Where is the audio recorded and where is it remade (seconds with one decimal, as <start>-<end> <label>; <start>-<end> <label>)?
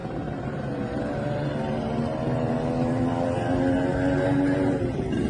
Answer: 0.0-3.0 remade; 3.0-5.3 recorded